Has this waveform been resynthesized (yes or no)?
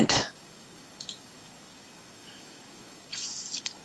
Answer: yes